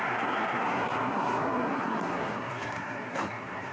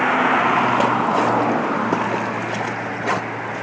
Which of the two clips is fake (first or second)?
first